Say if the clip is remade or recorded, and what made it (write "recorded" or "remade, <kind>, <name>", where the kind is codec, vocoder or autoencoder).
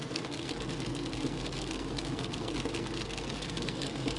remade, codec, SNAC